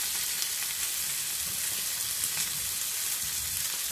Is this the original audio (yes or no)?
yes